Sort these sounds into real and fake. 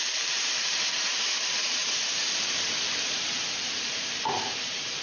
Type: fake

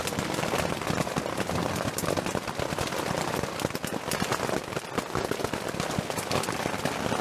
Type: real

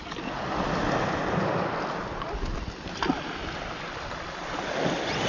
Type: real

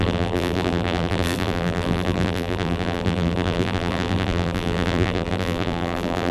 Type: fake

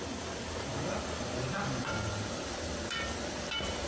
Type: real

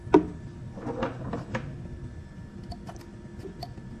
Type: real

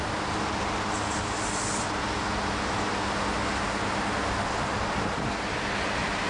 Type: real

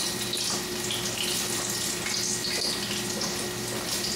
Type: real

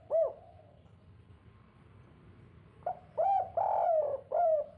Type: fake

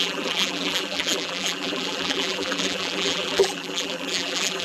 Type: fake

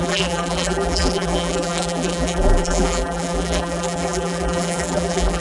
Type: fake